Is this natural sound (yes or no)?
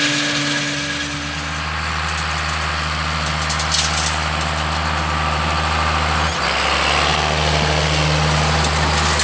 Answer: yes